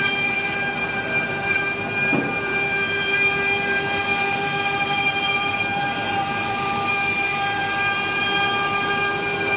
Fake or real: fake